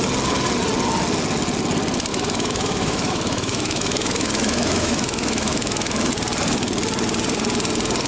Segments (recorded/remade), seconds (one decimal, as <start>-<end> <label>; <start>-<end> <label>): 0.0-2.1 recorded; 2.1-6.1 remade; 6.1-8.1 recorded

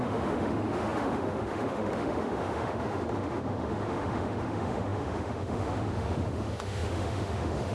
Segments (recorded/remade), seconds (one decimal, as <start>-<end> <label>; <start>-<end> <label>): 0.0-7.7 remade